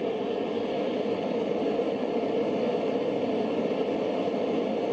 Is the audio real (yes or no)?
yes